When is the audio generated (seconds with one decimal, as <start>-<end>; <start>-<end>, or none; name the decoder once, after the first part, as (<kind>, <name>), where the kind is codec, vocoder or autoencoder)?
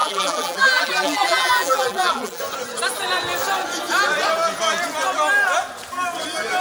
0.0-2.4 (vocoder, BigVGAN v2)